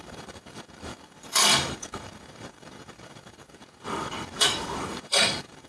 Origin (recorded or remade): remade